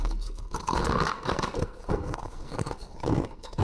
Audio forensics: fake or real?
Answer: fake